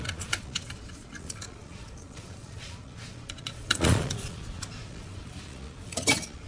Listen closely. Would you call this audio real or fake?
fake